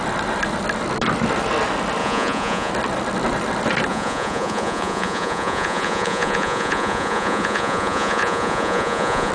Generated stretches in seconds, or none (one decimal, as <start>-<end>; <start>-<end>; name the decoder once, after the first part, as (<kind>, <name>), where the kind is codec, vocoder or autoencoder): 2.0-2.7 (vocoder, Vocos); 3.9-9.3